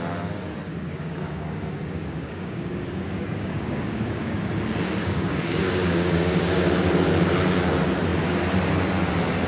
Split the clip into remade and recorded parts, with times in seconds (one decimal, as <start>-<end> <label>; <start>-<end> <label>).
0.0-0.7 recorded; 0.7-4.5 remade; 4.5-5.0 recorded; 5.0-6.7 remade; 6.7-9.5 recorded